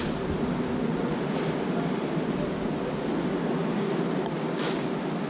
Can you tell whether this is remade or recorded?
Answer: recorded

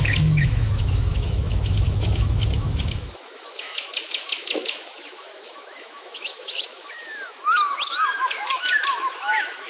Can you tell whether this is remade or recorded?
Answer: remade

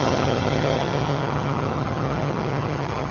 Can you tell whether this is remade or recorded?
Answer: remade